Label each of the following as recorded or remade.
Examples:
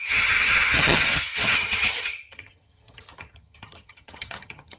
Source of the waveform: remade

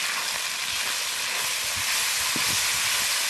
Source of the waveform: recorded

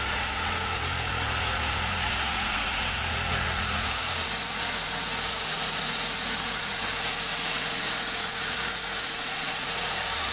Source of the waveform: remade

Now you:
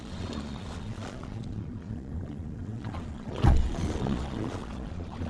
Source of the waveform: remade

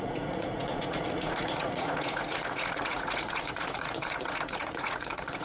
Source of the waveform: remade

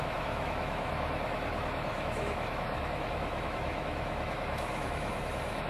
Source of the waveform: remade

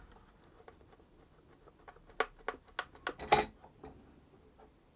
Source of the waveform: recorded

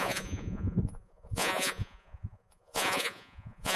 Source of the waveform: remade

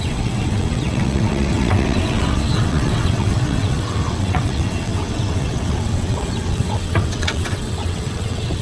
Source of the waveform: remade